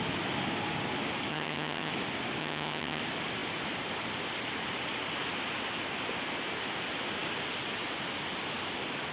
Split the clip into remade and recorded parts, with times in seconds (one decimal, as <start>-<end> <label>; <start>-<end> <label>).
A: 0.0-1.3 recorded; 1.3-1.9 remade; 1.9-2.4 recorded; 2.4-3.0 remade; 3.0-9.1 recorded